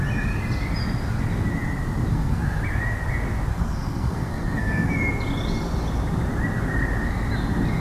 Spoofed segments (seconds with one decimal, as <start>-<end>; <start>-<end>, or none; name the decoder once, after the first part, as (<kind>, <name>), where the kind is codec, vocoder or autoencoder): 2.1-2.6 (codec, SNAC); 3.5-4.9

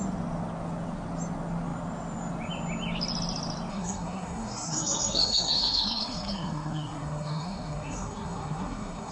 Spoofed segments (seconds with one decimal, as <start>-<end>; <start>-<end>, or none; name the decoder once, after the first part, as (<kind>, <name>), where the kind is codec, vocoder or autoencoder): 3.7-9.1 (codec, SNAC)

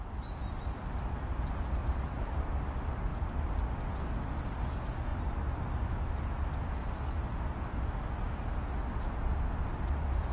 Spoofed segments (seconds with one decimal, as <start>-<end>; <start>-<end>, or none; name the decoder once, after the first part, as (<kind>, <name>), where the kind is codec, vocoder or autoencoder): 1.8-2.5 (vocoder, BigVGAN v2); 3.1-3.9; 5.1-6.2

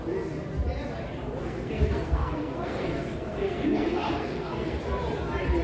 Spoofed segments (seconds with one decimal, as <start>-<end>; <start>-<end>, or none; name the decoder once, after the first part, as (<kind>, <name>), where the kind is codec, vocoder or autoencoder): 1.4-4.8 (codec, SNAC)

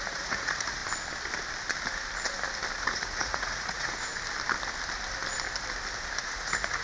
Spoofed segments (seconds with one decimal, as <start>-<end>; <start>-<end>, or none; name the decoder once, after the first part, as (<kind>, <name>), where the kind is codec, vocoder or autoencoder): 0.0-0.8 (vocoder, Vocos); 2.8-4.1; 6.2-6.8

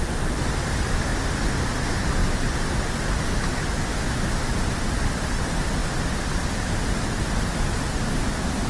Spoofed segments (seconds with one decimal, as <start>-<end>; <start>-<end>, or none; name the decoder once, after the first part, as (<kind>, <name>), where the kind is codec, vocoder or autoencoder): 3.9-4.5 (autoencoder, DAC-VAE)

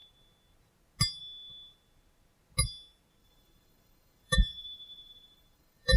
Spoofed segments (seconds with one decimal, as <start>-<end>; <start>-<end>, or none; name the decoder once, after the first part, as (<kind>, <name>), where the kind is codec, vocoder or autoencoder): 3.2-6.0 (vocoder, BigVGAN v2)